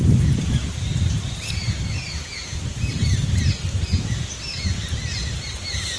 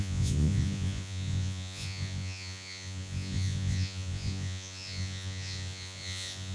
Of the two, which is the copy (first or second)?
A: second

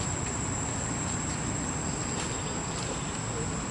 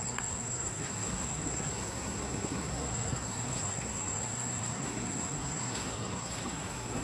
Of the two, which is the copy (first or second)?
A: second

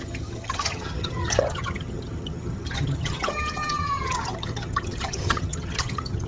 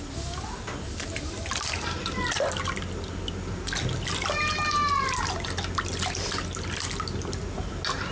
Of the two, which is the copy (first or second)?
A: first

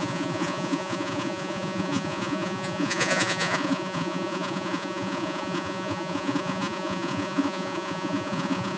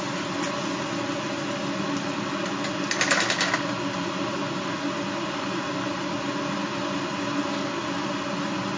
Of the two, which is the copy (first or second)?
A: first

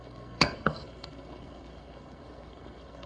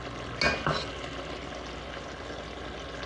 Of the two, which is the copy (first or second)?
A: first